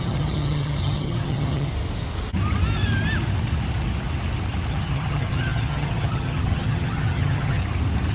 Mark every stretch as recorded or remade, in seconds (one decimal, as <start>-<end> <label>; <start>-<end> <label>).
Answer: 0.0-1.7 remade; 1.7-4.7 recorded; 4.7-7.6 remade; 7.6-8.1 recorded